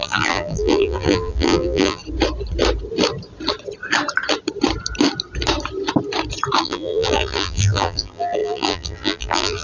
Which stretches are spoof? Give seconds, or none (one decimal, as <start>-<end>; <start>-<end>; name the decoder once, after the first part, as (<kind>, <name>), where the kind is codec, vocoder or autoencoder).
0.0-2.0 (vocoder, BigVGAN v2); 6.6-9.6